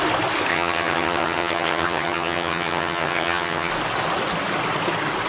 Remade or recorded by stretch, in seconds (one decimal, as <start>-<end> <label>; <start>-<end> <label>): 0.0-0.5 recorded; 0.5-3.7 remade; 3.7-5.3 recorded